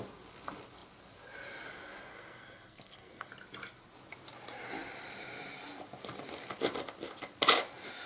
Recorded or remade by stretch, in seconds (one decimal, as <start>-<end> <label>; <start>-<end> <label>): 0.0-2.1 recorded; 2.1-3.3 remade; 3.3-8.1 recorded